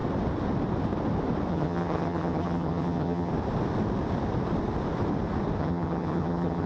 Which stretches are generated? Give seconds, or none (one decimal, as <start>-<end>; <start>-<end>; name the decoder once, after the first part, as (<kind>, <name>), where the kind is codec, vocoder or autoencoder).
1.5-3.3 (vocoder, HiFi-GAN); 5.6-6.7